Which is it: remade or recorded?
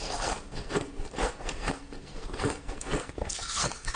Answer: remade